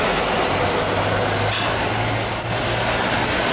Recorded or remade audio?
recorded